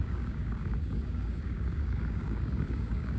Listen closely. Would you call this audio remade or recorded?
remade